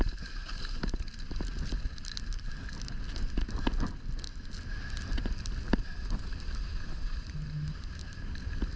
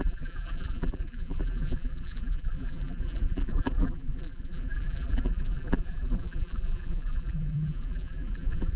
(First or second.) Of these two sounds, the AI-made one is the second